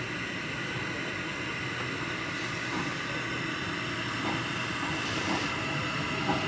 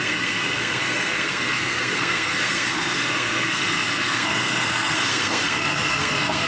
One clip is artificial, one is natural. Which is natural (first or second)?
first